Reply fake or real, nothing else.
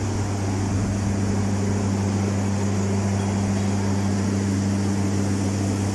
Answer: real